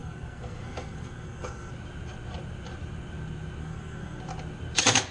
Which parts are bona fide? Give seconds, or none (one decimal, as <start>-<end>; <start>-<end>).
1.7-3.6; 4.2-5.1